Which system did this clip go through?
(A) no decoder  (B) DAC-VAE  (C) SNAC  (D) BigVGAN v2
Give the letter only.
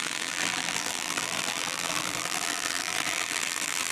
D